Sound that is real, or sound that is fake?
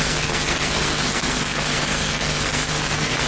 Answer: fake